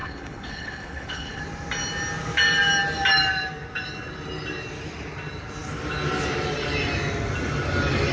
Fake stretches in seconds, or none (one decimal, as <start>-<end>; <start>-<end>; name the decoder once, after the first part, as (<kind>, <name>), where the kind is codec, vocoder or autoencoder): 0.0-1.4 (codec, HILCodec)